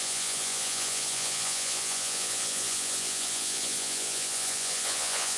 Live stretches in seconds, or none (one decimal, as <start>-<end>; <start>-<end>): none